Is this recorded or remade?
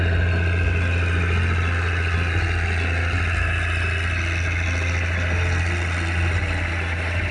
recorded